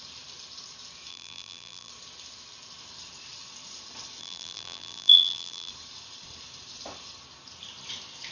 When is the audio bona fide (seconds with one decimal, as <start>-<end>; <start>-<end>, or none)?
0.0-1.1; 1.9-4.2; 5.7-8.3